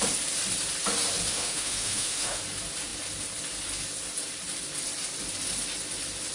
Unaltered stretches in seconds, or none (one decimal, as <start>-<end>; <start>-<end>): 0.0-1.3; 2.4-6.3